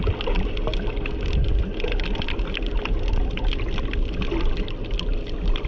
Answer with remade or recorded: recorded